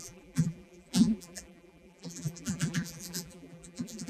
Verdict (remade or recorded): remade